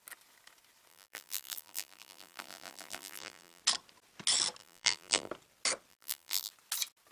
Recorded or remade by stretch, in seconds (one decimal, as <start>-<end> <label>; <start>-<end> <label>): 0.0-0.9 recorded; 0.9-3.6 remade; 3.6-4.6 recorded; 4.6-5.3 remade; 5.3-5.9 recorded; 5.9-6.5 remade; 6.5-7.1 recorded